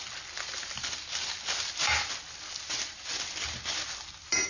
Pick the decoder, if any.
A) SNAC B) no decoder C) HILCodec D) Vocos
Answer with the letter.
B